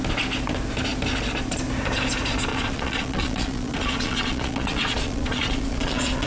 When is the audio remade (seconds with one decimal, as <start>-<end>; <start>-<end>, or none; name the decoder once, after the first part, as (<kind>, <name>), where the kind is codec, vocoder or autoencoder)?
2.5-6.3 (vocoder, Vocos)